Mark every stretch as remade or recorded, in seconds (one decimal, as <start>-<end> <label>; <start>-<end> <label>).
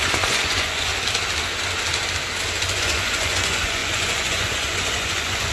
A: 0.0-0.9 remade; 0.9-2.7 recorded; 2.7-5.5 remade